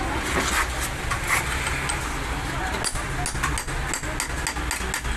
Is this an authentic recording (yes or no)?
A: yes